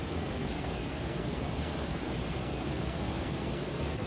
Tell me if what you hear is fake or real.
fake